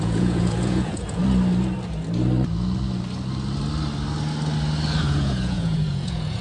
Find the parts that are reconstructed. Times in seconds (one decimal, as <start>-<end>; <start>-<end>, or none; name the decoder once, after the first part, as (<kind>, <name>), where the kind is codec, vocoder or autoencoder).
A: 0.0-1.2 (vocoder, Vocos); 5.0-6.4